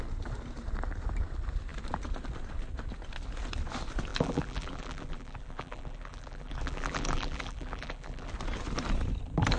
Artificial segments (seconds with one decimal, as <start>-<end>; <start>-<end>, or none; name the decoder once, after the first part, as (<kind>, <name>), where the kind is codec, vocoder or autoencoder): 4.1-8.3 (vocoder, BigVGAN v2)